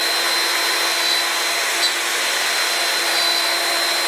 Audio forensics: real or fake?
real